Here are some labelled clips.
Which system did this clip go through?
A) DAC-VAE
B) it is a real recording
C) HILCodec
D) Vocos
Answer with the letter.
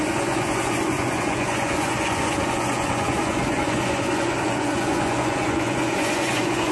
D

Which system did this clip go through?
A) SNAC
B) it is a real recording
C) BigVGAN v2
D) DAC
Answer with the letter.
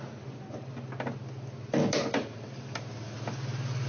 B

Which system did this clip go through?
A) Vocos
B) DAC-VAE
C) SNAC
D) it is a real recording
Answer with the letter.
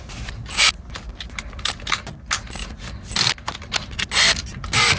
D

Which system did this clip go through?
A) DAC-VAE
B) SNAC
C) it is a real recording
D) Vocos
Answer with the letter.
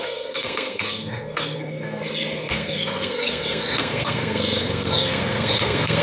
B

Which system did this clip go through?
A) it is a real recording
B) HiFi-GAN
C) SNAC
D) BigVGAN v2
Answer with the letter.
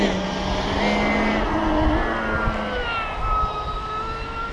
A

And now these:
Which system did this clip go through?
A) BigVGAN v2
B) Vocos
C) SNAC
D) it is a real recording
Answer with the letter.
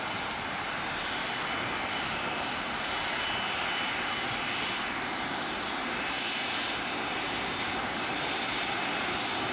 D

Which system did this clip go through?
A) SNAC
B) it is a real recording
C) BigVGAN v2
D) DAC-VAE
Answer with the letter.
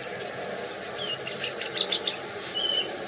B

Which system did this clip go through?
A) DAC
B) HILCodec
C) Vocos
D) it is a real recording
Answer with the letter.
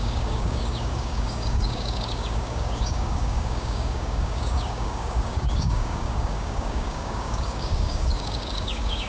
A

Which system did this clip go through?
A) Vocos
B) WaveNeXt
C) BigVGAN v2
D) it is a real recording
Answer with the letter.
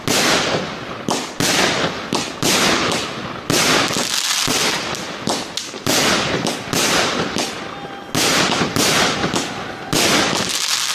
D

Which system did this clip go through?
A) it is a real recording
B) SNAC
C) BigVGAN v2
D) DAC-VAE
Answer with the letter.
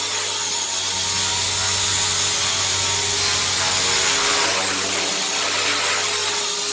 A